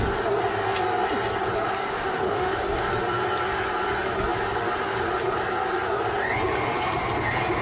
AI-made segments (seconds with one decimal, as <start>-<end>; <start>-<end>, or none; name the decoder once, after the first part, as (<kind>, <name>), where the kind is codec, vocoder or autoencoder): 1.9-2.5 (autoencoder, DAC-VAE)